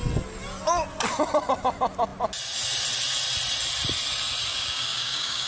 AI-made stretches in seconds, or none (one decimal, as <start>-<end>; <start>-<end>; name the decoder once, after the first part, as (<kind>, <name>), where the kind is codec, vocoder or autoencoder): 4.5-5.5 (codec, DAC)

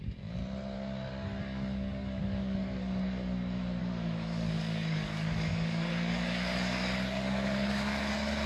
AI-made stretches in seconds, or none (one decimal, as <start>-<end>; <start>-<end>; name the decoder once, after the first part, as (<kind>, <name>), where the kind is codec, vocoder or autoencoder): 0.0-0.4 (codec, DAC); 1.4-8.5

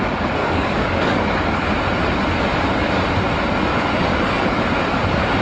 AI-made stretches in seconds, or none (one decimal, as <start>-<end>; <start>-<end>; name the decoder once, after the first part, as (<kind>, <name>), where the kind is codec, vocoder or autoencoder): 0.4-1.6 (codec, DAC); 3.7-4.6

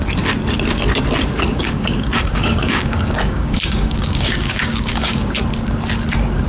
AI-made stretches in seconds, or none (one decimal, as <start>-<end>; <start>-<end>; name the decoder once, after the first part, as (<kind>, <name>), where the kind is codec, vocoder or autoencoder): 1.5-5.4 (codec, DAC)

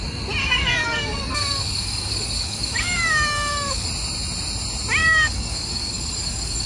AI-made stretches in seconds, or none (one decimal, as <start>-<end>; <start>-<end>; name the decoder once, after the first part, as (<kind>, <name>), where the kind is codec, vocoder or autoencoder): 0.4-3.9 (codec, DAC); 5.0-6.7

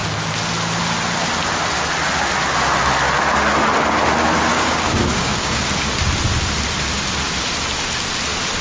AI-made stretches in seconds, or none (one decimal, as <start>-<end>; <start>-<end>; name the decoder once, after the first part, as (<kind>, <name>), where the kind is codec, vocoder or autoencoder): 4.5-5.6 (codec, DAC)